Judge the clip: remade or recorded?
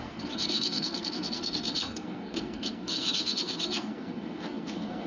remade